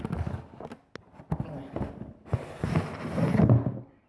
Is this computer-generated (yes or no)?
no